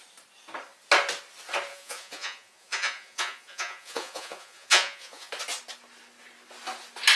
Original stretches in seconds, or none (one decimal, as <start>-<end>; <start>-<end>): 0.0-1.7; 5.3-7.2